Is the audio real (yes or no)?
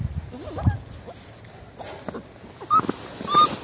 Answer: yes